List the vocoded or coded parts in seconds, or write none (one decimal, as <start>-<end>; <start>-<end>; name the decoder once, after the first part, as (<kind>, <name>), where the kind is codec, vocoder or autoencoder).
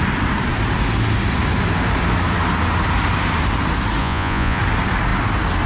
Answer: 4.0-4.6 (vocoder, Vocos)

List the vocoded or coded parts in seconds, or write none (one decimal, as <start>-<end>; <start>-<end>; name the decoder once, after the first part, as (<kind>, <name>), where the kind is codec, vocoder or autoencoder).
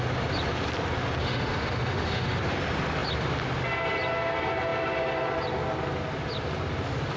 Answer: 1.2-2.4 (autoencoder, DAC-VAE)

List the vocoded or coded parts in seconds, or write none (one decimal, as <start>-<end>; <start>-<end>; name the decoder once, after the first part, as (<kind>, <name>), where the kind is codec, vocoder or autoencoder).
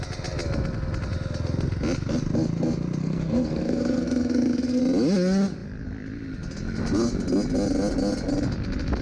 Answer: 3.0-4.8 (codec, SNAC)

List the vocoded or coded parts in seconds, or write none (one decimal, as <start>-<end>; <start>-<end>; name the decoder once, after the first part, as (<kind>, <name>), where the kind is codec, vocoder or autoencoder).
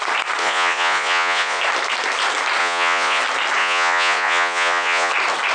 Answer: 0.4-1.6 (vocoder, Vocos); 2.6-3.2; 3.6-5.1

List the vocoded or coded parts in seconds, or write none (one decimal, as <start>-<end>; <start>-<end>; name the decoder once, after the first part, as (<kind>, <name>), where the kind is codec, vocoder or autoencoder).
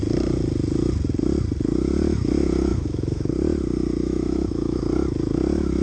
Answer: 2.7-3.3 (autoencoder, DAC-VAE); 4.0-4.8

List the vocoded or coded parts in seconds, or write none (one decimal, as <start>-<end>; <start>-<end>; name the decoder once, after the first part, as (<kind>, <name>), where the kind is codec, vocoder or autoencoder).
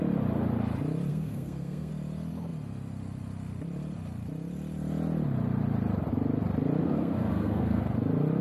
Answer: 1.1-1.9 (codec, SNAC); 6.8-7.8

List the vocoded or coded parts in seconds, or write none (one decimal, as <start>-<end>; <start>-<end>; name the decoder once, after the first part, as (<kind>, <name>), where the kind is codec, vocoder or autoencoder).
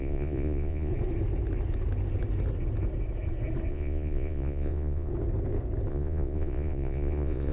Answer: 0.0-0.9 (vocoder, Vocos); 3.7-5.1; 5.9-7.5